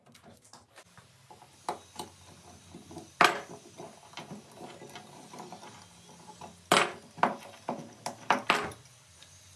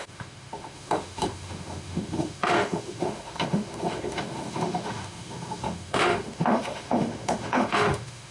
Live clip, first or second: first